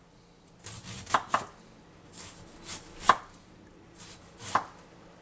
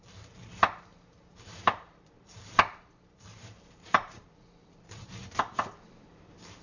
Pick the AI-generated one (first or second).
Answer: second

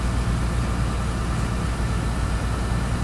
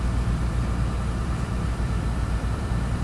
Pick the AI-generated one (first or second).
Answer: second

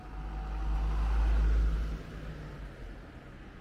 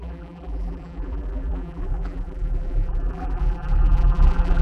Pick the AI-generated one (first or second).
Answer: second